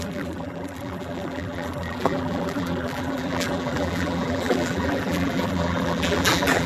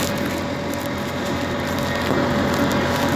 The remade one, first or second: first